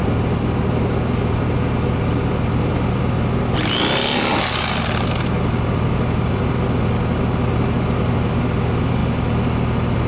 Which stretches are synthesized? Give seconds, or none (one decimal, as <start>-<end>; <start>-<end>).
none